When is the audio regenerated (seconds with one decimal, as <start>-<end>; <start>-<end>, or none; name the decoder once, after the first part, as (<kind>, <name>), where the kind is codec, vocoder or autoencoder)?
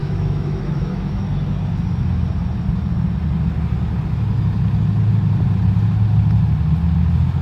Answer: 0.0-1.2 (autoencoder, DAC-VAE)